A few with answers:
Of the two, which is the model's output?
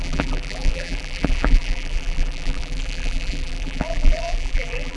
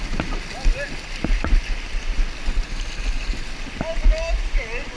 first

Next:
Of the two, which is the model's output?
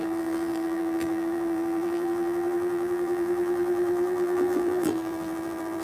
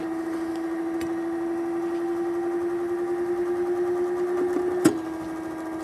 first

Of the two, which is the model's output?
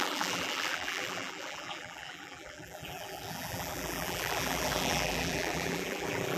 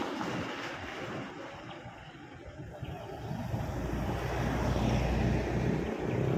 first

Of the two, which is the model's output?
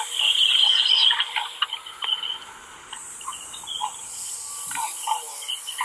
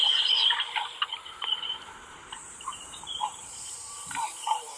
second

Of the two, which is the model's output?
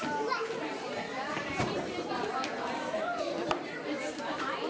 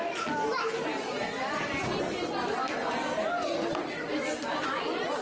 first